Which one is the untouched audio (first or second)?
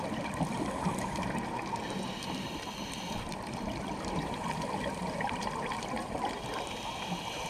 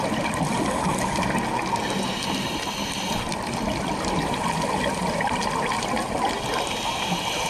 second